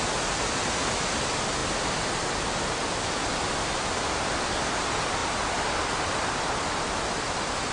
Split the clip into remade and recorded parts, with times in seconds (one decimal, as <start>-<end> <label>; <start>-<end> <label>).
0.0-7.7 recorded